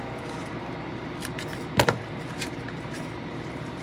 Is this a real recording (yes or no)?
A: no